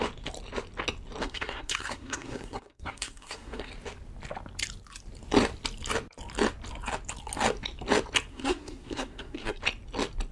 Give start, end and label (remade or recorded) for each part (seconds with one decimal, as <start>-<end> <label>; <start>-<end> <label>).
0.0-1.2 recorded; 1.2-3.7 remade; 3.7-8.3 recorded; 8.3-9.6 remade; 9.6-10.3 recorded